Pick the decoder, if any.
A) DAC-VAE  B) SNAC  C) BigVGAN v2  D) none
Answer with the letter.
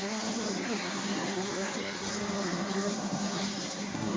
B